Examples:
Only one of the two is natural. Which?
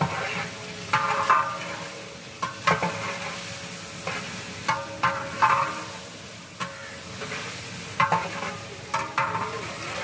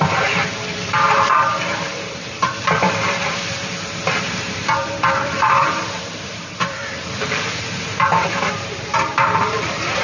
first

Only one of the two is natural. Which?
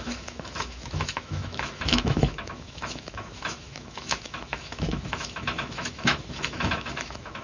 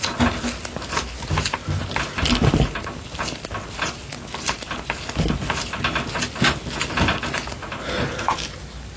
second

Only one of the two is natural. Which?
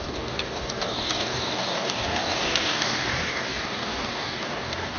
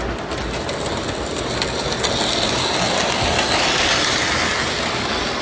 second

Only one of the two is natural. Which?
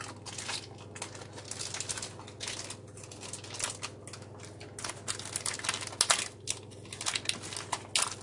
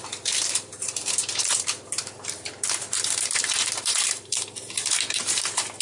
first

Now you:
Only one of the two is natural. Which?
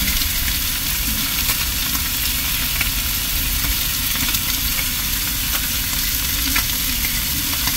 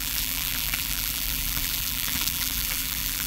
first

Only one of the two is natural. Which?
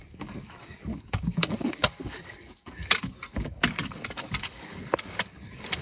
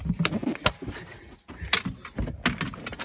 second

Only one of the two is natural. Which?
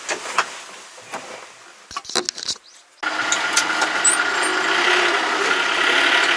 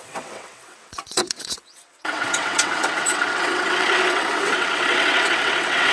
first